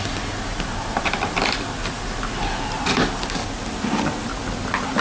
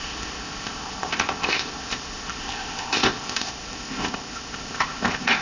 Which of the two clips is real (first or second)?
first